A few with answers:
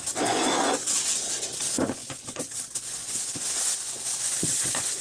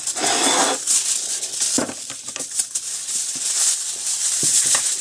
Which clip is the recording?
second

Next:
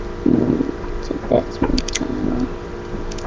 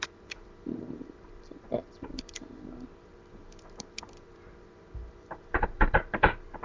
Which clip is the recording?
first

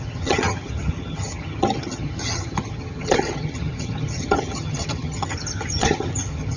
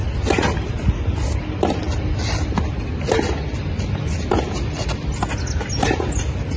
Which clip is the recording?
second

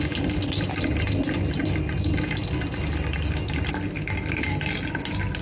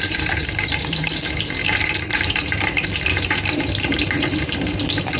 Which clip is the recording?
first